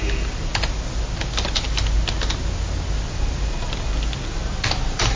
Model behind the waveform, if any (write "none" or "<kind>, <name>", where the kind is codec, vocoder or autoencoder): none